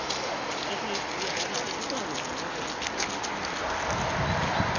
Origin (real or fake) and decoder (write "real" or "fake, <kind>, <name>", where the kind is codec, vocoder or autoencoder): real